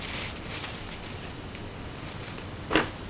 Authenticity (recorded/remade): recorded